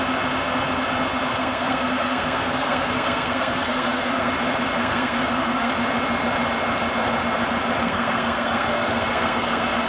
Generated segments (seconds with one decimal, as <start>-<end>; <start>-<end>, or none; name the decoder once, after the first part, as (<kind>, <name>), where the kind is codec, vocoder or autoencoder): 1.3-4.3 (codec, SNAC); 4.8-5.7; 7.8-9.9